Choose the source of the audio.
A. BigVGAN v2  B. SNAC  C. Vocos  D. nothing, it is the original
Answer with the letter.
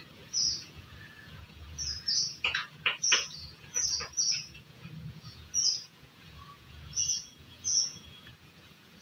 C